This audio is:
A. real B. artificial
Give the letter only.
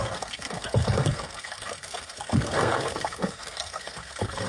B